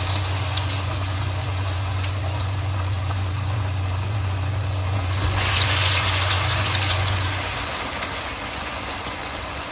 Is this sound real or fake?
fake